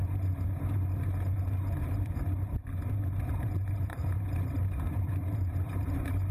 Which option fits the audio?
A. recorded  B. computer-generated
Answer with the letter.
B